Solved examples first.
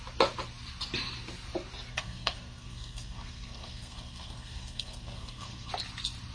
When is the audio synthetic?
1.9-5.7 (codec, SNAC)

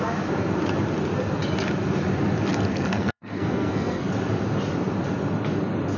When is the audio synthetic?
2.7-4.1 (codec, SNAC)

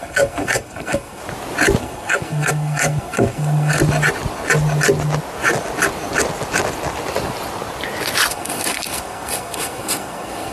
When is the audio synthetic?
0.0-1.2 (codec, SNAC); 1.8-3.8; 8.3-10.5

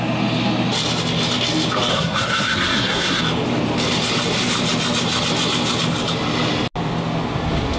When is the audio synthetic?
1.9-3.2 (codec, SNAC)